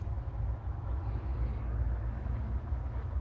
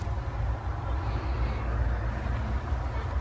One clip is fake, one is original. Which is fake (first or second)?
first